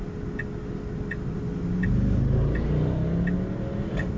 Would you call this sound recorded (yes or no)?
yes